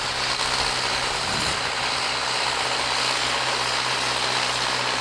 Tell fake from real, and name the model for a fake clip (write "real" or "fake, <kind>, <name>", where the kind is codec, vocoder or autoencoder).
real